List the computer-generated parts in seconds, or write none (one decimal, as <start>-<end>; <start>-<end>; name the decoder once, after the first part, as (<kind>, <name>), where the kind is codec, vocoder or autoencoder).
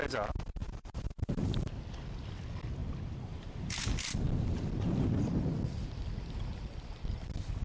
0.6-1.6 (vocoder, BigVGAN v2); 2.8-5.3